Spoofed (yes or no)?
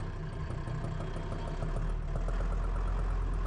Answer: no